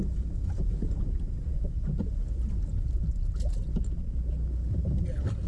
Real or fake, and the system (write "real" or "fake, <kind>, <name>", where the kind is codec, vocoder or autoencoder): real